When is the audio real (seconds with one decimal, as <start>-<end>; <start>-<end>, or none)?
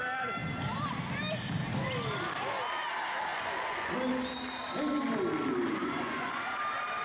0.0-3.3; 3.9-5.8; 6.4-7.0